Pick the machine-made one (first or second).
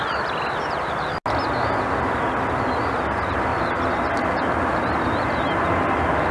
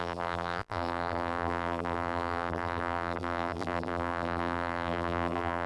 second